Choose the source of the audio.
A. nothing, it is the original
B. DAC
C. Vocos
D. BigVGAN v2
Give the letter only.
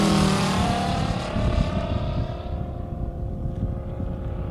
D